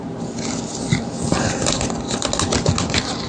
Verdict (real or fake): real